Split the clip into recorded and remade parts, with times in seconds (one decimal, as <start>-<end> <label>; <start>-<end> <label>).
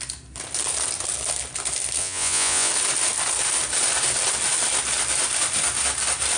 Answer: 0.0-2.0 recorded; 2.0-2.7 remade; 2.7-6.4 recorded